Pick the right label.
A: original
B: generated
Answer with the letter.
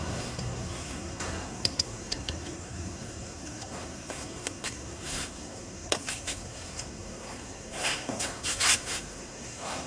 B